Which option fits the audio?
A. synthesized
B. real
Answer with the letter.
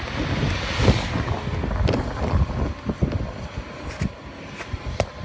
B